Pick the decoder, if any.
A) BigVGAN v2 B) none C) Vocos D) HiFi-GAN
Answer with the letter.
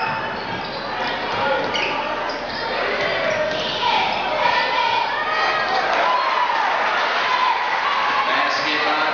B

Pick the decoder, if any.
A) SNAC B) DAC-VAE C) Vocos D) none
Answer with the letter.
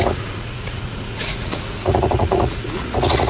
C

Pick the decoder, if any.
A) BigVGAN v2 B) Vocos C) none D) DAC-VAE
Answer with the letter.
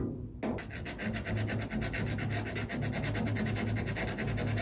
C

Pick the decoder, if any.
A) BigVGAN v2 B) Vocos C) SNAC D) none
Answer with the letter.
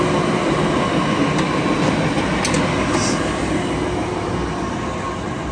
D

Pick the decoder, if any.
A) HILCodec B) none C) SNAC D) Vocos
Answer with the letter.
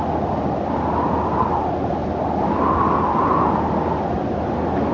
B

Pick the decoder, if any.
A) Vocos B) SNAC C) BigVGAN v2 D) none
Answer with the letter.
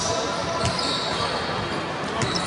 D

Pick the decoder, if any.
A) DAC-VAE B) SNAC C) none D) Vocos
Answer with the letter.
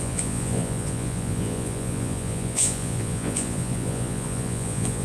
D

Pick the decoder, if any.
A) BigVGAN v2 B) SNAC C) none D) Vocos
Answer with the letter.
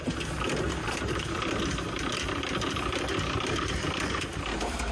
C